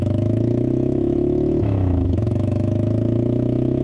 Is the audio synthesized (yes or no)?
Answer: yes